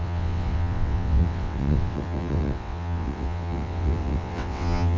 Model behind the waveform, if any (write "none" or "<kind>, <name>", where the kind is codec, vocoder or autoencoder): vocoder, WaveNeXt